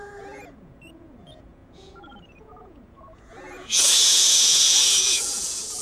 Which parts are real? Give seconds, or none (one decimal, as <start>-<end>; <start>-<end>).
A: none